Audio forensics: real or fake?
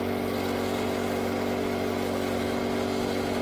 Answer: real